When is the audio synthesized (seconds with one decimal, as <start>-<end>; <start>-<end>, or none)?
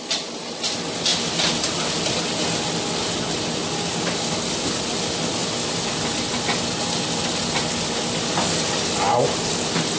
5.4-6.6